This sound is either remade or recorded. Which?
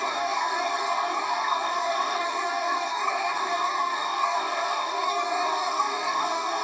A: remade